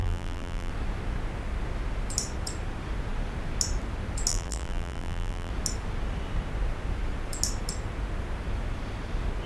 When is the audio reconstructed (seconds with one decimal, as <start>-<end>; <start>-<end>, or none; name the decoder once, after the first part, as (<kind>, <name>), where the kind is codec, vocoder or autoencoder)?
0.0-0.7 (vocoder, BigVGAN v2); 4.3-5.5